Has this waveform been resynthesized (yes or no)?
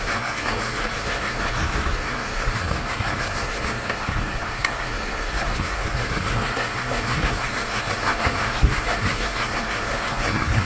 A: yes